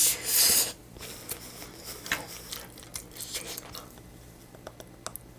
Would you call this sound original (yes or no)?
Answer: yes